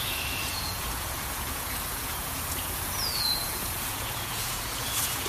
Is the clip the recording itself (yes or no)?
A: no